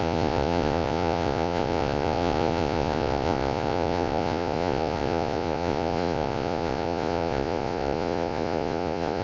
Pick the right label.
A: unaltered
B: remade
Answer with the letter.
B